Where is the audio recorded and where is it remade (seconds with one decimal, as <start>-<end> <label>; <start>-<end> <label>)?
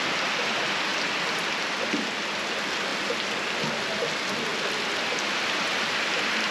0.0-2.9 remade; 2.9-3.7 recorded; 3.7-6.5 remade